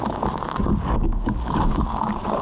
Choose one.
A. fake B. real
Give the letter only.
A